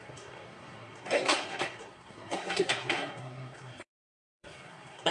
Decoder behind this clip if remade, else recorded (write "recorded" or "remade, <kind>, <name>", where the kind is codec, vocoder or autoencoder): remade, codec, SNAC